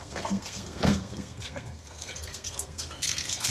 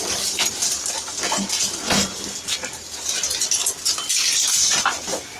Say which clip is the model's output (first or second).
first